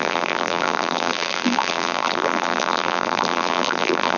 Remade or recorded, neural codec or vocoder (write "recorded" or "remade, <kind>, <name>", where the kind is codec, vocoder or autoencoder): remade, vocoder, BigVGAN v2